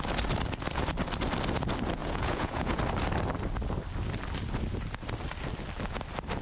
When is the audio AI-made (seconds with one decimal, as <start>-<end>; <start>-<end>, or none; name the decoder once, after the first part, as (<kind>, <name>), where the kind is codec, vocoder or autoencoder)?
2.0-2.8 (vocoder, Vocos)